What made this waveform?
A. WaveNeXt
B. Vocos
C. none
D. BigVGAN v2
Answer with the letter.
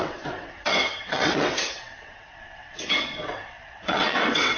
A